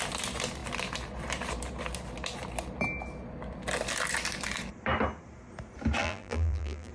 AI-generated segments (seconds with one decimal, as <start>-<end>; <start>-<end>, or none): 6.0-6.9

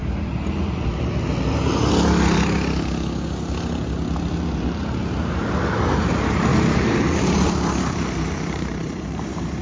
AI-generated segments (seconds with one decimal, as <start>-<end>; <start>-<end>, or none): 6.5-9.6

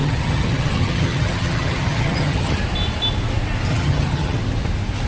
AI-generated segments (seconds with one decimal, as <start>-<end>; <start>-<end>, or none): 0.0-2.6; 3.7-4.4

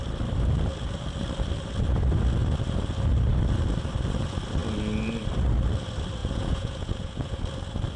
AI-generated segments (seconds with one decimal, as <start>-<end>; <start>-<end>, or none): 6.2-7.4